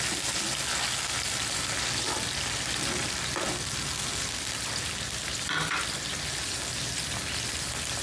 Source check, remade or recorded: recorded